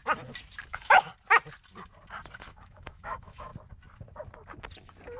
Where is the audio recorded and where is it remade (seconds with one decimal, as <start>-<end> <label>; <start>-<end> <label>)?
0.0-0.7 recorded; 0.7-1.1 remade; 1.1-2.4 recorded; 2.4-3.5 remade; 3.5-5.2 recorded